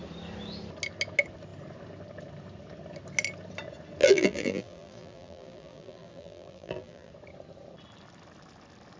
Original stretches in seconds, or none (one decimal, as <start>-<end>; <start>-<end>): 0.0-4.0; 7.1-9.0